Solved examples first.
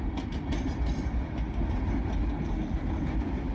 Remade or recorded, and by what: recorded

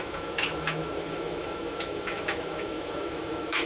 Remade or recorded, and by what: remade, autoencoder, DAC-VAE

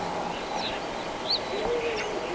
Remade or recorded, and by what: recorded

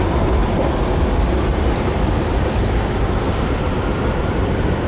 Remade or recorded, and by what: recorded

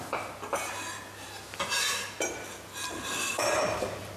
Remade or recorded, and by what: recorded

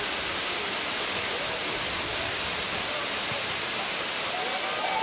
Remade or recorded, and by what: recorded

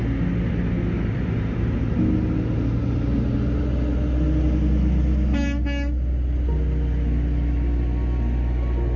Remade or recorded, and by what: recorded